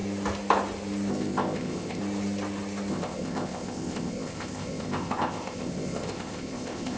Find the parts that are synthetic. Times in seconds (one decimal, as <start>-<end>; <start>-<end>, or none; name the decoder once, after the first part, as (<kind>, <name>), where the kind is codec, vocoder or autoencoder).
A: 1.1-2.0 (codec, ZipCodec); 2.9-7.0